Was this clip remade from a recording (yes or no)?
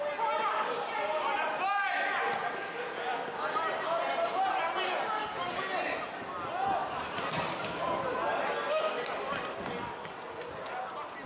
no